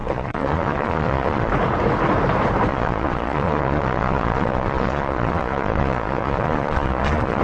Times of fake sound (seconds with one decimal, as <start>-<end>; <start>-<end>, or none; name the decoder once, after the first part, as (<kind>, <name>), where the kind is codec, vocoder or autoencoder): 0.0-1.5 (vocoder, Vocos); 2.7-7.4